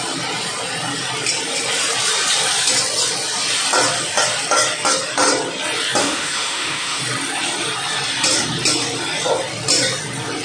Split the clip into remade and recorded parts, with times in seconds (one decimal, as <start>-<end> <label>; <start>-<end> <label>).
0.0-6.0 recorded; 6.0-7.0 remade; 7.0-10.4 recorded